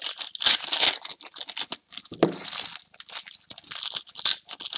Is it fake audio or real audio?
real